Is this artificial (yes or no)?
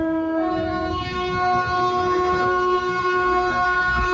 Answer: yes